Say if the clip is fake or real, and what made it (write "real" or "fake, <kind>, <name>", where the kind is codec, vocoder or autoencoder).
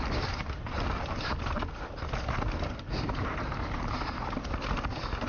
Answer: real